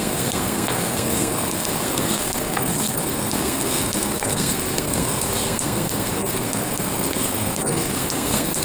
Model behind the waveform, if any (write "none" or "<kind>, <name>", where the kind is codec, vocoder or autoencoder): codec, SNAC